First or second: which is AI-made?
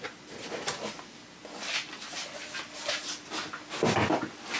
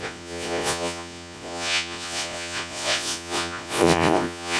second